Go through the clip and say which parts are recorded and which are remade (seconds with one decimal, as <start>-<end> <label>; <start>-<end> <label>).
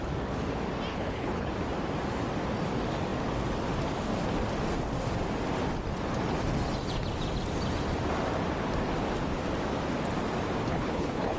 0.0-0.9 recorded; 0.9-1.5 remade; 1.5-10.7 recorded; 10.7-11.4 remade